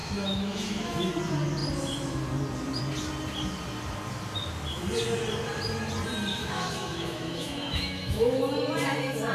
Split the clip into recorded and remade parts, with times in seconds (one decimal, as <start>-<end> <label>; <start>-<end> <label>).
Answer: 0.0-1.1 remade; 1.1-6.3 recorded; 6.3-8.4 remade; 8.4-9.3 recorded